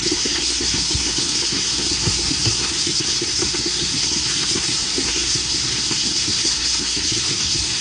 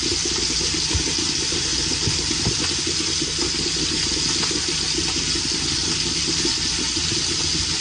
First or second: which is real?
second